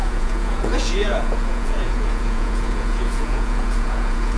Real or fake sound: fake